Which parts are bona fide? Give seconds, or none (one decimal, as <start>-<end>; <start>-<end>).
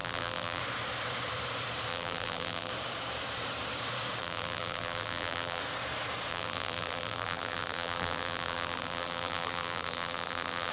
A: 0.6-1.9; 2.7-4.2; 5.6-6.3